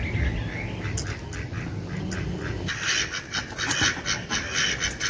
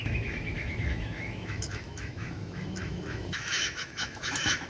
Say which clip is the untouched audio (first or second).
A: first